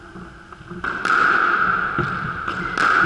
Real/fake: real